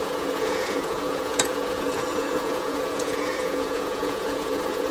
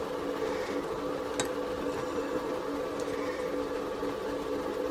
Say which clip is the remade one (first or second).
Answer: first